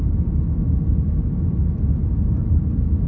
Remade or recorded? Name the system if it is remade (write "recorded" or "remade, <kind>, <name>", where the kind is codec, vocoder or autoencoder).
recorded